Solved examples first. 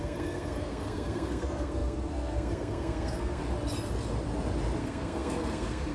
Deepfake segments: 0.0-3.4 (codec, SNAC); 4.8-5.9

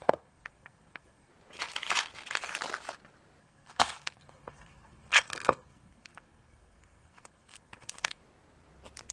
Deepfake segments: 0.0-1.3 (codec, SNAC); 3.4-8.2

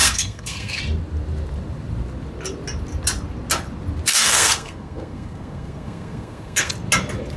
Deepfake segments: 0.0-0.8 (codec, SNAC); 4.1-6.7

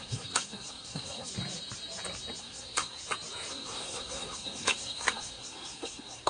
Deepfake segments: 0.0-1.3 (codec, SNAC); 2.4-3.0; 3.5-6.3

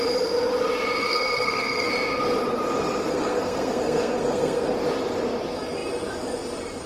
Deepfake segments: 1.0-1.9 (codec, SNAC); 3.1-4.7

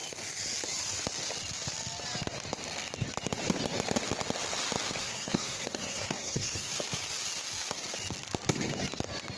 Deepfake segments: 5.0-6.7 (codec, SNAC)

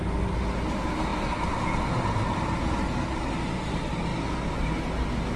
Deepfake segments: none

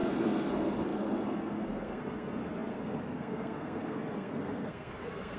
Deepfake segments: 0.0-5.4 (codec, SNAC)